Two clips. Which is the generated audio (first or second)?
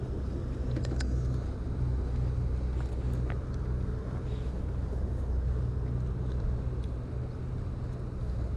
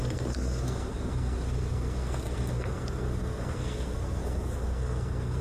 second